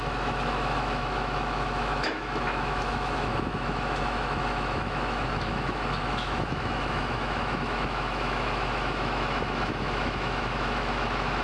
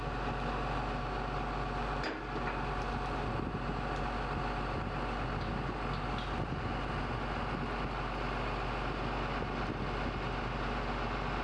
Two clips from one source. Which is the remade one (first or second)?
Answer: first